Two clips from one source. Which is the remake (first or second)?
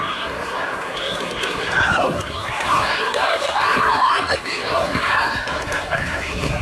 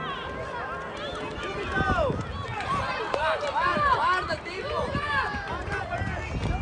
first